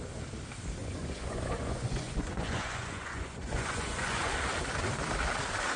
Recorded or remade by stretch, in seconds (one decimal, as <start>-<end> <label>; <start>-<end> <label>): 0.0-0.8 recorded; 0.8-4.3 remade; 4.3-5.8 recorded